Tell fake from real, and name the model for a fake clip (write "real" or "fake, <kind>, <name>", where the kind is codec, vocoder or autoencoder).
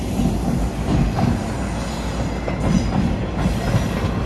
real